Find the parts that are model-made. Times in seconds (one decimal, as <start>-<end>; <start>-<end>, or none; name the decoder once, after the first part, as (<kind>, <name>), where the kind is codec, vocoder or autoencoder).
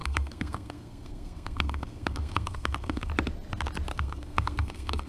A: 0.0-3.1 (codec, SNAC); 3.9-5.1